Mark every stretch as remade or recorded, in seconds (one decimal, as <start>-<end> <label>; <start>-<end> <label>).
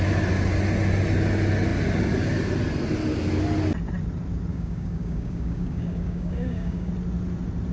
0.0-4.5 recorded; 4.5-6.9 remade; 6.9-7.7 recorded